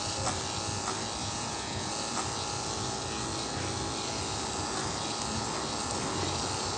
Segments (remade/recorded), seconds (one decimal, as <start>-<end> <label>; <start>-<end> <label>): 0.0-1.2 recorded; 1.2-1.9 remade; 1.9-6.8 recorded